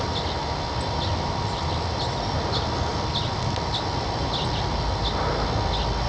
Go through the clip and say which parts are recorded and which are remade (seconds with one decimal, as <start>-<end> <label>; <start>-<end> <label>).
0.0-6.1 recorded